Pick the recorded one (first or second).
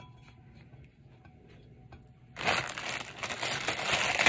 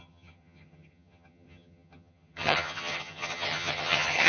first